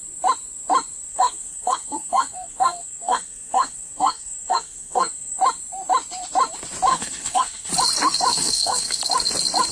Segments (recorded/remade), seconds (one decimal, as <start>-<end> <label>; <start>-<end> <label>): 0.0-1.1 recorded; 1.1-5.4 remade; 5.4-6.9 recorded; 6.9-7.7 remade; 7.7-8.3 recorded; 8.3-9.0 remade; 9.0-9.7 recorded